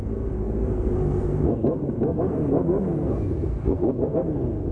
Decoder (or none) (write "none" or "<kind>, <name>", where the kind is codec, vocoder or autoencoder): codec, SNAC